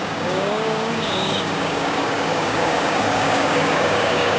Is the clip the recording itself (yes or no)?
no